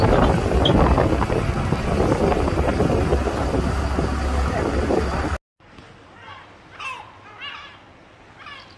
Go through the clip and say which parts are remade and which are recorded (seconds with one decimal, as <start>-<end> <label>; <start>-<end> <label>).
0.0-8.8 recorded